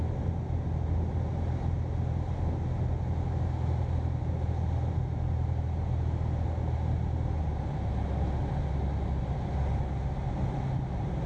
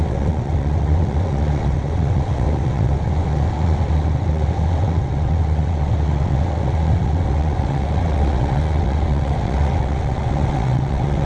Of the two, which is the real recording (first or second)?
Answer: first